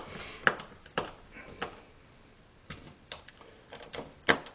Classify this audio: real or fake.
real